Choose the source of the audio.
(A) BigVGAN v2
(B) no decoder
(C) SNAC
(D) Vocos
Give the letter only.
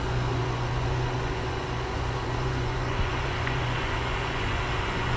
D